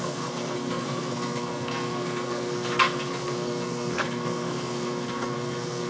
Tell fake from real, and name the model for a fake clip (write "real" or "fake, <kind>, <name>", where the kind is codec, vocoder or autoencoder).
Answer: fake, codec, SNAC